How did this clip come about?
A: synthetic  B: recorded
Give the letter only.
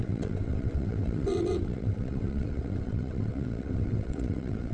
A